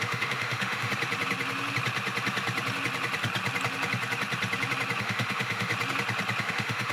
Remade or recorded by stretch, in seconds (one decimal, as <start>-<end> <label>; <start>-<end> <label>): 0.0-0.9 remade; 0.9-5.0 recorded; 5.0-5.7 remade; 5.7-6.4 recorded; 6.4-6.9 remade